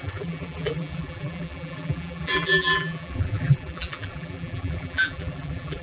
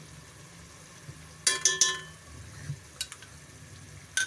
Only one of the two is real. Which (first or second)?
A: second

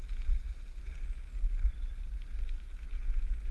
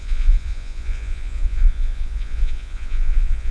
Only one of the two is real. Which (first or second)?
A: first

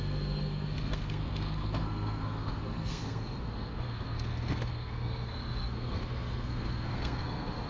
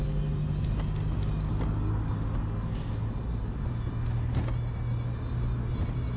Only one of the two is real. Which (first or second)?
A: second